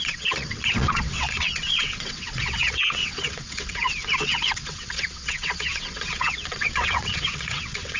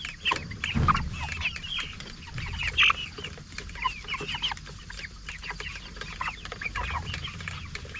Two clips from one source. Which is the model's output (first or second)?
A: first